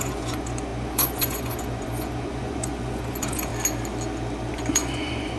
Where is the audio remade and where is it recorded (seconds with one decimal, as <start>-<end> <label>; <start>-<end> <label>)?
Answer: 0.0-3.5 remade; 3.5-4.5 recorded; 4.5-5.4 remade